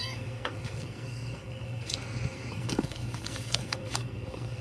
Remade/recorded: remade